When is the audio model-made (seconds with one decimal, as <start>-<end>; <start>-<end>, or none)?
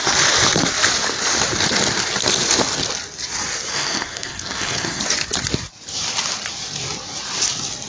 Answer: 3.7-5.0